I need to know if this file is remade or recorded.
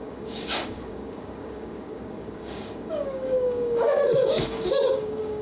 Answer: remade